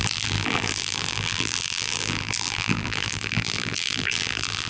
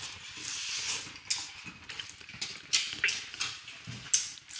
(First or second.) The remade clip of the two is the first